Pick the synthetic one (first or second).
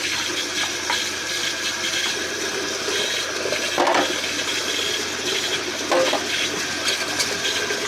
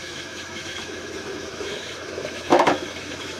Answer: second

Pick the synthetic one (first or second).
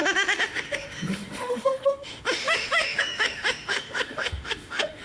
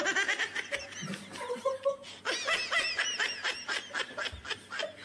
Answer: first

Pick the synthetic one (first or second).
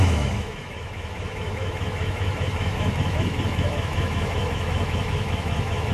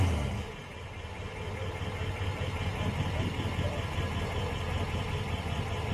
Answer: first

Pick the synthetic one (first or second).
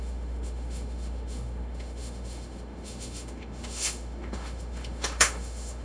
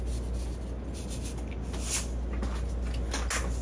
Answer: first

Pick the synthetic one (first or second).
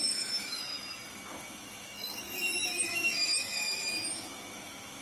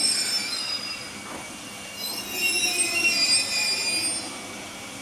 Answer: first